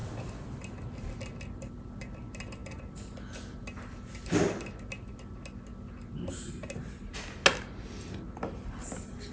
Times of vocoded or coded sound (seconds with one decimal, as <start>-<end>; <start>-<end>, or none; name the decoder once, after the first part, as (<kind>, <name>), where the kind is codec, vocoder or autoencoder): none